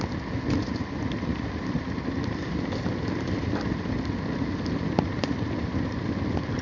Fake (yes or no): no